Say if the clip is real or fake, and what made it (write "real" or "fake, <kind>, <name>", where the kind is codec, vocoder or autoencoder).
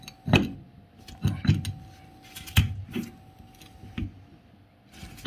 real